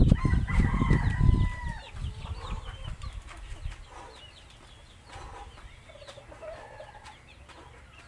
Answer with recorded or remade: recorded